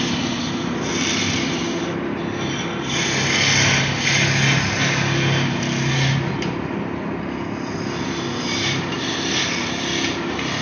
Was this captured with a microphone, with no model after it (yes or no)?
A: yes